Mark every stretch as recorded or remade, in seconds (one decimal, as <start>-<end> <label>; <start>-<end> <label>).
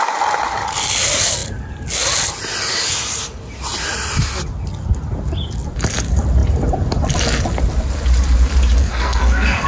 0.0-8.8 recorded; 8.8-9.7 remade